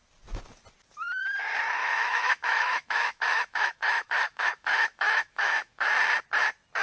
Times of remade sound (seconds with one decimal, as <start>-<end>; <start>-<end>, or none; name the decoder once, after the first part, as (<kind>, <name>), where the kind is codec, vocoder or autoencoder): 1.8-5.9 (autoencoder, DAC-VAE)